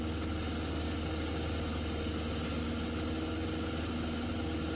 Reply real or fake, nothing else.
real